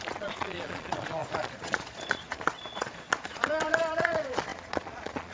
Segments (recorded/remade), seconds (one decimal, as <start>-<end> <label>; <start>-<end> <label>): 0.0-5.3 remade